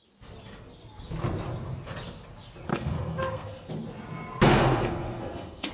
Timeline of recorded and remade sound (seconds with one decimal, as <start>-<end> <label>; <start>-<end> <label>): 0.0-2.7 recorded; 2.7-3.7 remade; 3.7-4.5 recorded; 4.5-5.7 remade